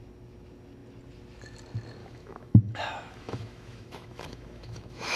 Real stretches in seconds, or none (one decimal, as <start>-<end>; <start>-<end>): 0.0-2.0